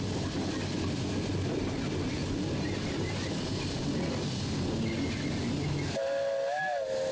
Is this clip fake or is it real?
real